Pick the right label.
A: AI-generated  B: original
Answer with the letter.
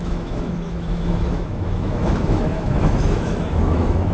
A